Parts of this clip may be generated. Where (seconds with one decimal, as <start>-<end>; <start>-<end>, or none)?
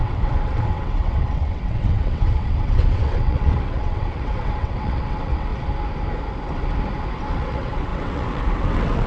0.0-5.5; 7.2-9.1